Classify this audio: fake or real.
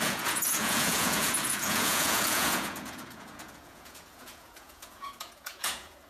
fake